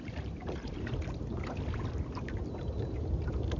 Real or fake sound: real